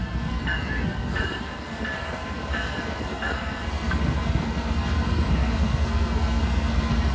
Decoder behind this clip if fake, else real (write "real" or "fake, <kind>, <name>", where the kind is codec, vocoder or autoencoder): fake, codec, SNAC